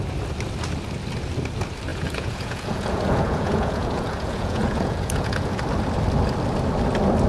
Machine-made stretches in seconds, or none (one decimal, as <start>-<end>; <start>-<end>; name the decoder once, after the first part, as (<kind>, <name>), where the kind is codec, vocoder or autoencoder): 1.9-5.6 (vocoder, Vocos)